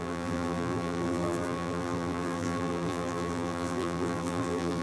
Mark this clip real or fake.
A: fake